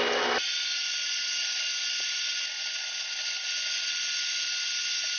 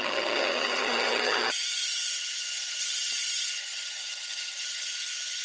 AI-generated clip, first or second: second